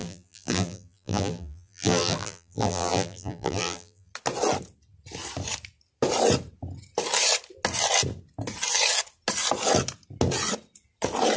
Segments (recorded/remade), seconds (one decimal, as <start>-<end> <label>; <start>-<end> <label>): 0.0-4.1 remade; 4.1-11.4 recorded